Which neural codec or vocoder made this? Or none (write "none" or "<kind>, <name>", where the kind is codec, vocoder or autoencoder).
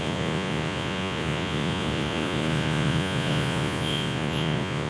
vocoder, Vocos